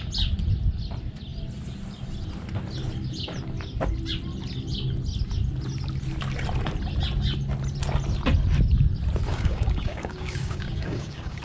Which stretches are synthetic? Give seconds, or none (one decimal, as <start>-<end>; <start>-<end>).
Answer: 9.3-11.4